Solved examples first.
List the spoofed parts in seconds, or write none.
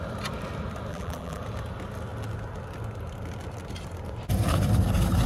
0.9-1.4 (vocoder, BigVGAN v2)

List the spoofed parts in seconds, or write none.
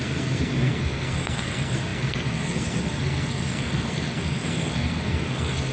0.0-5.7 (codec, SNAC)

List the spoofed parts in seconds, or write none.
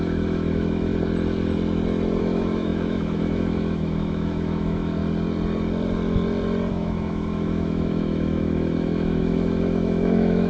0.0-0.9 (autoencoder, DAC-VAE); 2.2-5.0; 6.7-10.5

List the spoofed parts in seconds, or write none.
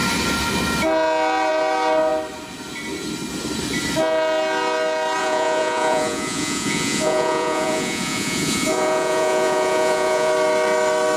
5.2-10.3 (vocoder, Vocos)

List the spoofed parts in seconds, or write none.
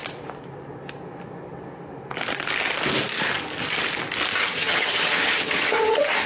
4.4-6.3 (vocoder, HiFi-GAN)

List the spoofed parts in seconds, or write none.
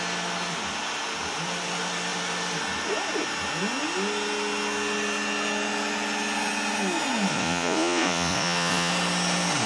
7.3-8.9 (vocoder, Vocos)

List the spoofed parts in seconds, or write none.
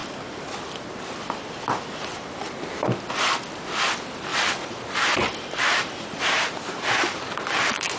4.3-8.0 (vocoder, BigVGAN v2)